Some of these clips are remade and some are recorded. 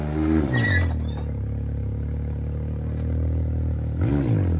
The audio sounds recorded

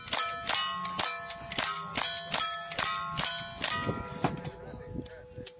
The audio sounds recorded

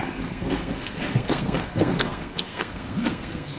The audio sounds remade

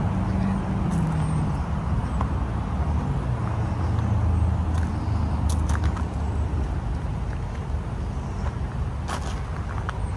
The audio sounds recorded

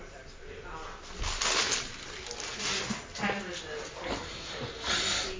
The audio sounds recorded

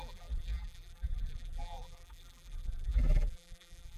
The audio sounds remade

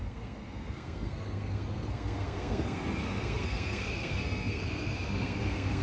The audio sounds remade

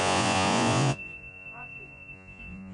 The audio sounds remade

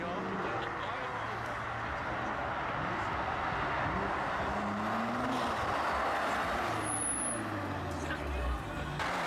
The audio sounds recorded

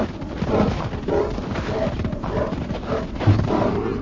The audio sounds recorded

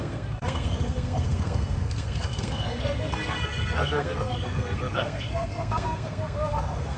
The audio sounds remade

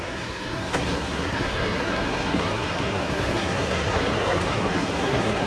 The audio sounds remade